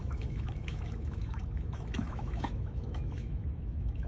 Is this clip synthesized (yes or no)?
yes